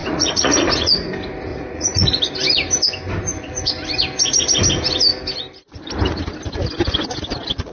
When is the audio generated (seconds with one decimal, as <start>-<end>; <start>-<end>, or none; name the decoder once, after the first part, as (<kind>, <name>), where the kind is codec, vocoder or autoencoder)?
0.0-1.1 (vocoder, Vocos); 1.5-2.2